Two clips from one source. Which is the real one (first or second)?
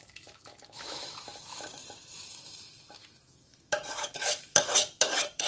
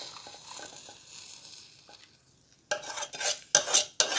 second